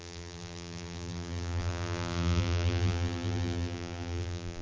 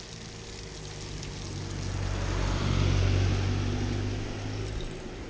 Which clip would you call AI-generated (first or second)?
first